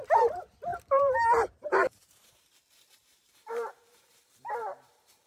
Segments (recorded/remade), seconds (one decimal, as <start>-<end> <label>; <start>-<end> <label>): 0.0-0.7 recorded; 0.7-2.6 remade; 2.6-3.1 recorded; 3.1-5.3 remade